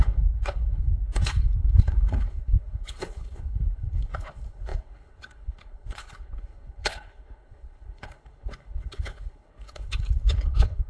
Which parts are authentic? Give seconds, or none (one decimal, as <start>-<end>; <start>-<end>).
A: none

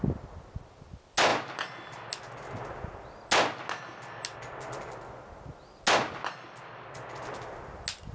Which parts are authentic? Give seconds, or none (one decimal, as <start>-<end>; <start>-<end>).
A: 0.0-8.1

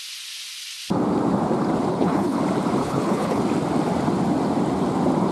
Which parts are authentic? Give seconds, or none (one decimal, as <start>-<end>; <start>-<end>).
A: 0.0-1.9; 2.4-2.8; 3.4-5.3